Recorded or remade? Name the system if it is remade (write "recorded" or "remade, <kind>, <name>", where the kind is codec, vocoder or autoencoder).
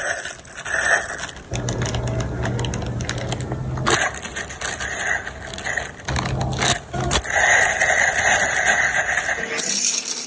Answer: recorded